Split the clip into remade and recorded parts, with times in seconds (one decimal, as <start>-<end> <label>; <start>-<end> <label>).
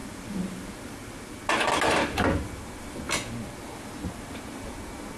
0.0-5.2 recorded